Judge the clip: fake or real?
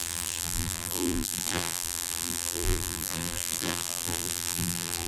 fake